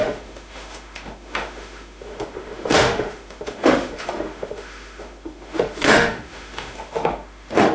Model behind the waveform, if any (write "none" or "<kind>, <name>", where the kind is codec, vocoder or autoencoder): autoencoder, DAC-VAE